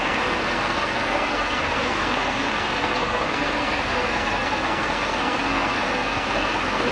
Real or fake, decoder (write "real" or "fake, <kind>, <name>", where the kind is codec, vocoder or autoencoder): fake, codec, SNAC